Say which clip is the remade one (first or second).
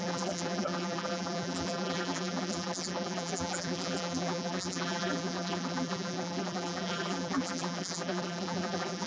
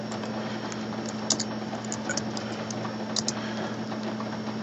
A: first